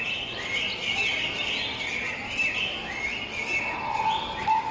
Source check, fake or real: real